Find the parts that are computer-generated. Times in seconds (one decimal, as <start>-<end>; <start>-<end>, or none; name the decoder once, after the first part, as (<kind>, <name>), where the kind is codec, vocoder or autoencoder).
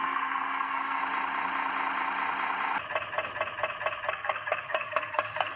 0.0-1.0 (codec, SNAC); 4.1-5.6